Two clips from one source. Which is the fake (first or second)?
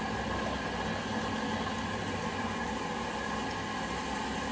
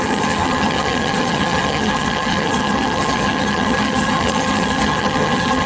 second